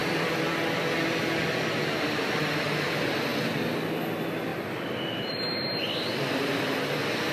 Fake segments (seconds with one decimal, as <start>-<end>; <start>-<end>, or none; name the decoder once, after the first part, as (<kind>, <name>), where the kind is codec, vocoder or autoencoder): 0.0-0.6 (vocoder, BigVGAN v2); 4.5-6.6